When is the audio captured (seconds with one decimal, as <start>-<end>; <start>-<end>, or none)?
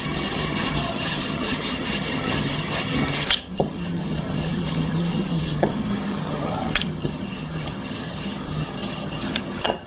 none